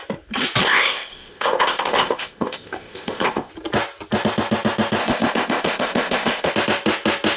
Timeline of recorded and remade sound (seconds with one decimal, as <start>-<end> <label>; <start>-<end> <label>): 0.0-0.6 recorded; 0.6-3.5 remade; 3.5-5.0 recorded; 5.0-6.5 remade; 6.5-7.4 recorded